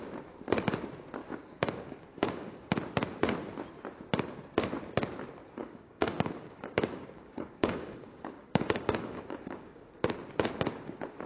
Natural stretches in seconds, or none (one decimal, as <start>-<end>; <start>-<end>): 0.0-1.2; 2.7-5.6; 9.9-11.3